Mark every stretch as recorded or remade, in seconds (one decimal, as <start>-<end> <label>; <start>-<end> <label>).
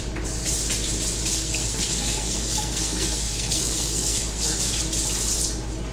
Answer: 0.0-1.3 recorded; 1.3-4.8 remade; 4.8-5.9 recorded